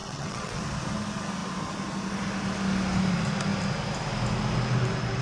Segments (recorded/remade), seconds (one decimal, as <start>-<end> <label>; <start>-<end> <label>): 0.0-0.6 remade; 0.6-5.2 recorded